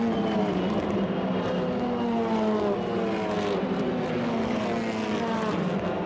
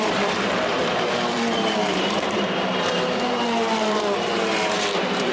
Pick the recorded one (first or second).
first